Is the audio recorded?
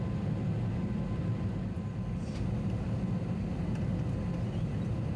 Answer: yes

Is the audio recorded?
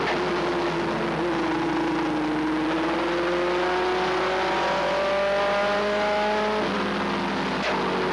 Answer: yes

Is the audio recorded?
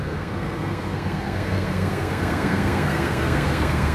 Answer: no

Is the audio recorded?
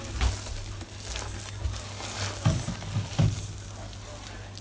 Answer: yes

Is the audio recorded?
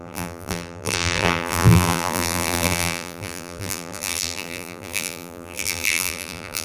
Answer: no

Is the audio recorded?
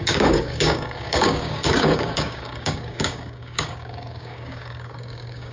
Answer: no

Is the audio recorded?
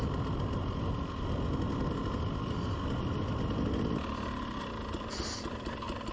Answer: yes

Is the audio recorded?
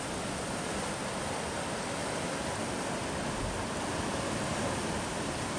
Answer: yes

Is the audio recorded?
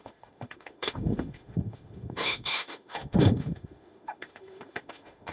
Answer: no